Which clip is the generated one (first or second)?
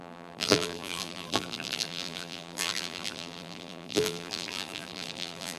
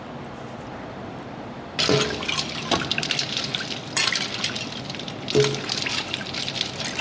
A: first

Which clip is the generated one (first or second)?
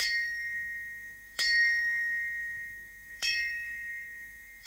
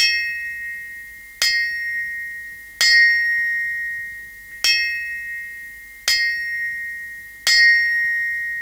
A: first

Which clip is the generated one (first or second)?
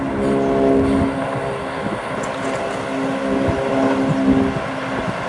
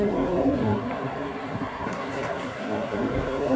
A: second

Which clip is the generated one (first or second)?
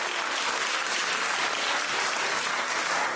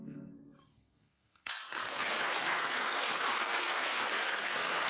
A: second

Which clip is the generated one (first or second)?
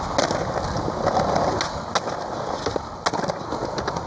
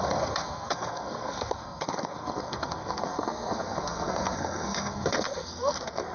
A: second